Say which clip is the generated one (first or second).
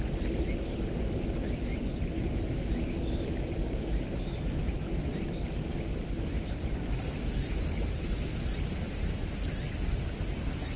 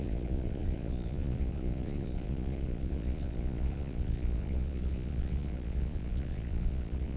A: second